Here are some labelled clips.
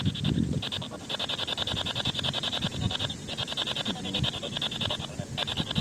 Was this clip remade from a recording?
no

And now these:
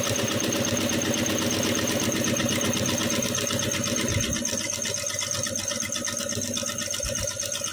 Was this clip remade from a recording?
no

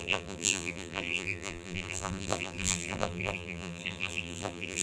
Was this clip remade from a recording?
yes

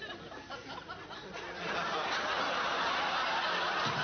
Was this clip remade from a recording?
no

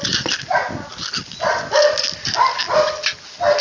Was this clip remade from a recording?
no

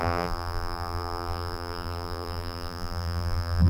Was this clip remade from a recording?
yes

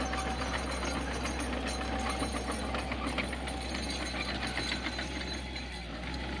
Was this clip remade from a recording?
no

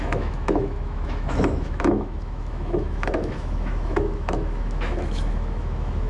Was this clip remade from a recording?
yes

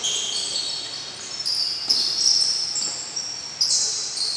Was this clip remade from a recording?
no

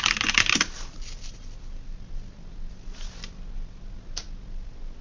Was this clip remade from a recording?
no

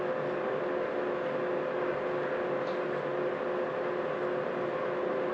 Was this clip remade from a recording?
no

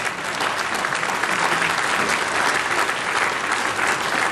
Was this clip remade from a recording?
no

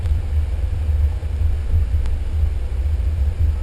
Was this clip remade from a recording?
no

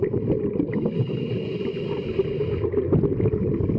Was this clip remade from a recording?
no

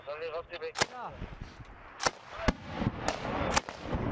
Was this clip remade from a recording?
no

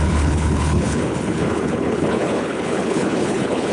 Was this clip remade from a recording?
yes